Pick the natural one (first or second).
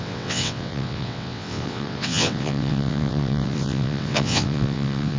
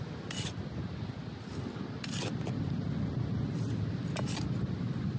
second